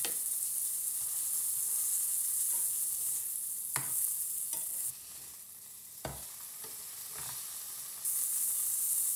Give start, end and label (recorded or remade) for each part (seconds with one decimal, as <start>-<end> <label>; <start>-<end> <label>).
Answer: 0.0-9.2 recorded